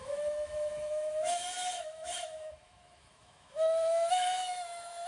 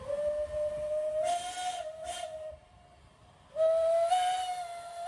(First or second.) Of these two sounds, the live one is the second